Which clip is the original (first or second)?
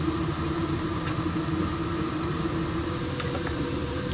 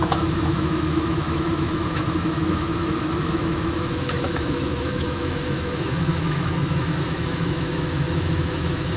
first